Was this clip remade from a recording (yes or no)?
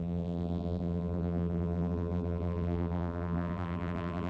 yes